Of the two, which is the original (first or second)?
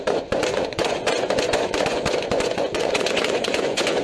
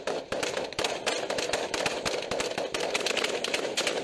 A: second